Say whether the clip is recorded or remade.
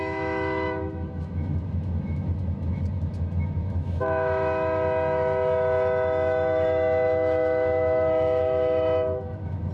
remade